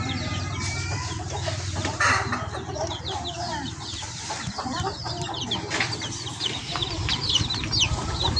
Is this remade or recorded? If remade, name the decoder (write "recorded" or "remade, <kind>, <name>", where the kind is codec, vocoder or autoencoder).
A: remade, vocoder, BigVGAN v2